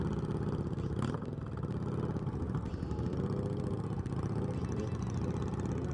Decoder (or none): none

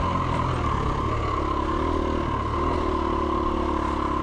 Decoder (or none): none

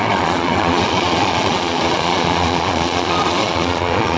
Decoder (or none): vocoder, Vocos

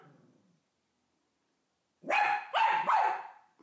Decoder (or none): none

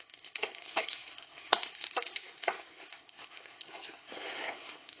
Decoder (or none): codec, SNAC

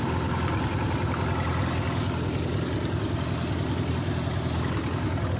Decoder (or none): none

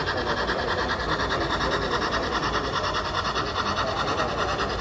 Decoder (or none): vocoder, BigVGAN v2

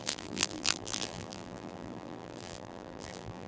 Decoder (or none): vocoder, BigVGAN v2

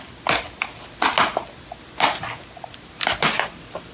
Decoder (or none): none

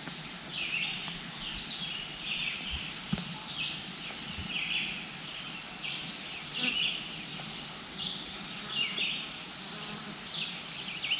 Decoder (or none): none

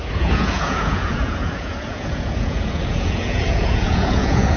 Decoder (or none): vocoder, Vocos